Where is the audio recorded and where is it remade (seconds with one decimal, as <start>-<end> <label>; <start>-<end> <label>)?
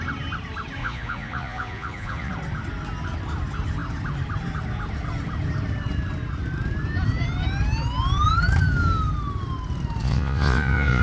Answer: 0.0-0.8 recorded; 0.8-2.3 remade; 2.3-10.0 recorded; 10.0-11.0 remade